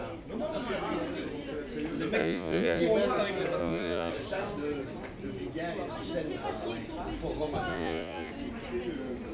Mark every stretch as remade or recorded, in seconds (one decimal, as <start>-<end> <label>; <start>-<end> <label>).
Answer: 0.0-2.2 recorded; 2.2-2.8 remade; 2.8-3.6 recorded; 3.6-4.1 remade; 4.1-7.7 recorded; 7.7-8.3 remade; 8.3-9.3 recorded